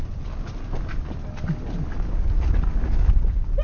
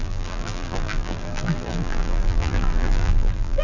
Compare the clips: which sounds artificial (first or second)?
second